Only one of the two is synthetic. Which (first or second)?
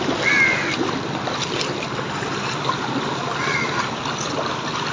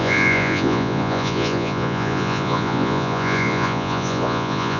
second